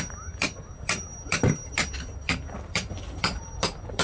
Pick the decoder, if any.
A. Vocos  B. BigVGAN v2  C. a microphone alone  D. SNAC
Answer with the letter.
B